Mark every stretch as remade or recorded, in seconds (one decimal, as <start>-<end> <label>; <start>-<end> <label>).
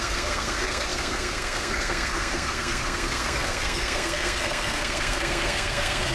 0.0-6.1 remade